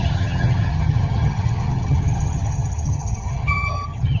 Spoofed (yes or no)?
yes